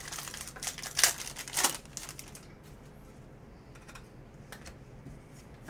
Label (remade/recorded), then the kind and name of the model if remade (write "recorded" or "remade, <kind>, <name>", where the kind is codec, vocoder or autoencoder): recorded